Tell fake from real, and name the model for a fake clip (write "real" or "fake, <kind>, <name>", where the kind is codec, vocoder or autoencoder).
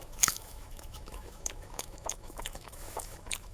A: fake, autoencoder, DAC-VAE